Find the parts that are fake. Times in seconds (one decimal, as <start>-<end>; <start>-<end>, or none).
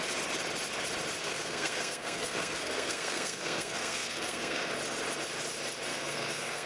1.2-4.7; 5.9-6.7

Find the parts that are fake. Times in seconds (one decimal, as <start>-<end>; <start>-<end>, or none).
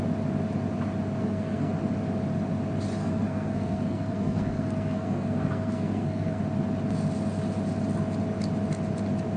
1.2-1.7; 3.0-6.4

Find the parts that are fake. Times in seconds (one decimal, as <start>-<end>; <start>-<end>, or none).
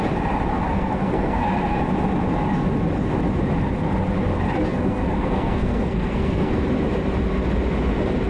0.5-1.8; 4.7-6.7